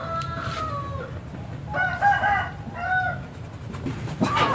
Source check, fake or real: real